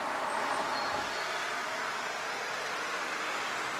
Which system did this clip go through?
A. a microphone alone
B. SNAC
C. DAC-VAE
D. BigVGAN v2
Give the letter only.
A